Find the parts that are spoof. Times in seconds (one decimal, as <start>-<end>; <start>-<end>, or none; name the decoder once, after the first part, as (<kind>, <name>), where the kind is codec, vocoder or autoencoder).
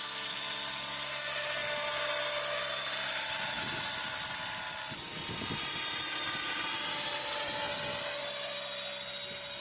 none